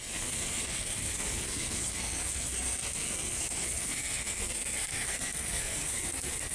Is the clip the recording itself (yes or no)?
no